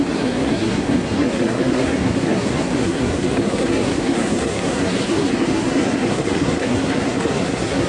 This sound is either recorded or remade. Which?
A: remade